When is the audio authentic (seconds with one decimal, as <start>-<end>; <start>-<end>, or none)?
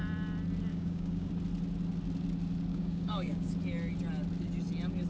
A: 0.0-0.7; 1.3-2.7; 3.5-5.1